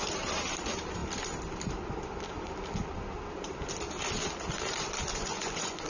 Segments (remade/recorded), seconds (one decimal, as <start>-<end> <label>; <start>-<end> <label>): 0.0-5.1 recorded; 5.1-5.9 remade